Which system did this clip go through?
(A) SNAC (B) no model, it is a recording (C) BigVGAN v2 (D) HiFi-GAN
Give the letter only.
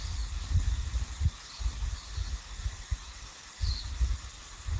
B